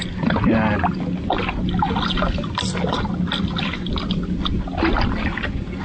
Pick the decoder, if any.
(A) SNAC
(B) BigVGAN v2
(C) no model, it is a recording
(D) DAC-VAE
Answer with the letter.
C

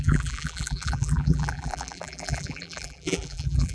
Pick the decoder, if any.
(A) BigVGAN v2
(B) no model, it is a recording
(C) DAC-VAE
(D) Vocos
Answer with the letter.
A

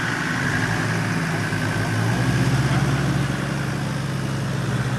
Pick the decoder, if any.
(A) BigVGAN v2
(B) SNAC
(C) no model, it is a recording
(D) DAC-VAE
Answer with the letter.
C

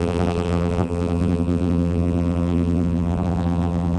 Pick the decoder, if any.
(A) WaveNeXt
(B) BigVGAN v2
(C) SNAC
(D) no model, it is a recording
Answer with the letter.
B